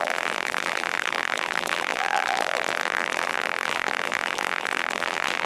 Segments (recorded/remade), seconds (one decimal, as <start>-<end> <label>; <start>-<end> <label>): 0.0-5.5 remade